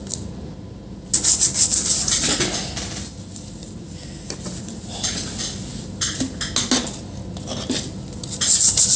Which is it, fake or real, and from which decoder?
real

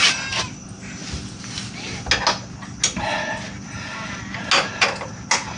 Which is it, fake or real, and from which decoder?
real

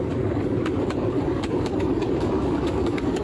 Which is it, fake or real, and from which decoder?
fake, codec, DAC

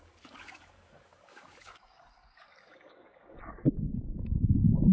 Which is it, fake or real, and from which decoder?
fake, codec, DAC